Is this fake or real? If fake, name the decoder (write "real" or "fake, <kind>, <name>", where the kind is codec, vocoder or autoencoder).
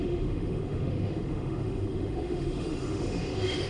fake, autoencoder, DAC-VAE